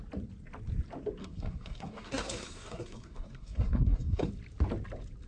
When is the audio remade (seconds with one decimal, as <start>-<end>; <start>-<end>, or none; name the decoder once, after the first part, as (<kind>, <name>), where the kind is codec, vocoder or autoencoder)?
1.2-4.3 (codec, SNAC)